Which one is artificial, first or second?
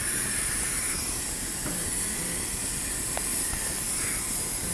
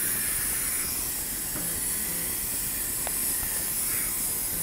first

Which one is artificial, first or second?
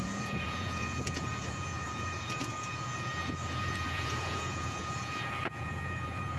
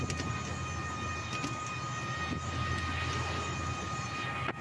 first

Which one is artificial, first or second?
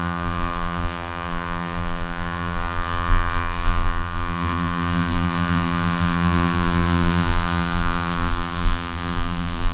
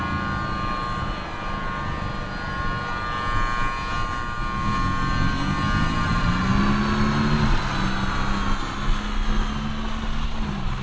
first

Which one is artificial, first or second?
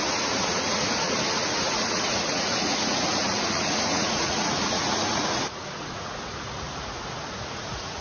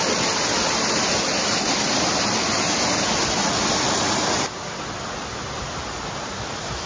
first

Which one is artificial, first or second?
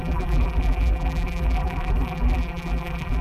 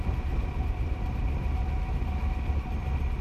first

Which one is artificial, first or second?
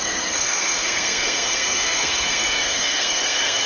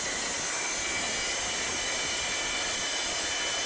first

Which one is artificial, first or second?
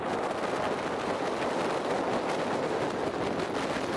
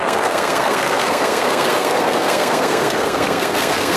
second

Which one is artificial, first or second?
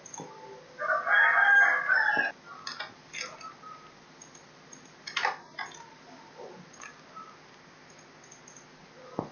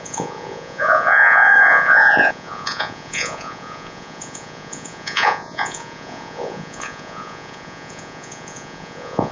second